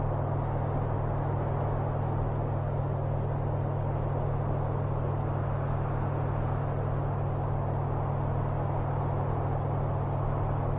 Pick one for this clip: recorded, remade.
recorded